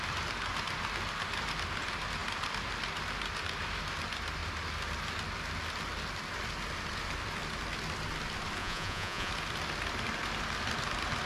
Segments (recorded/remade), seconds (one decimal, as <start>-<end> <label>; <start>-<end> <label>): 0.0-8.6 recorded; 8.6-9.3 remade; 9.3-11.3 recorded